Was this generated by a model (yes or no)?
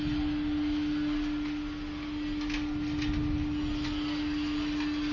no